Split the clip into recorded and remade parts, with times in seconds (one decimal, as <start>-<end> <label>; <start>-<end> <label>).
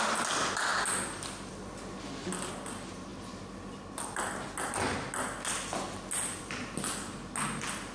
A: 0.0-7.9 recorded